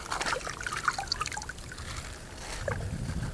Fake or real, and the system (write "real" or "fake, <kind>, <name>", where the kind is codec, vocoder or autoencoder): real